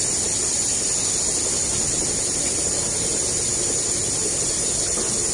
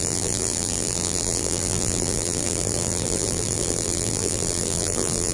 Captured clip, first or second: first